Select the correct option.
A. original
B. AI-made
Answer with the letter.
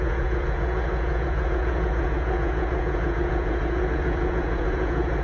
B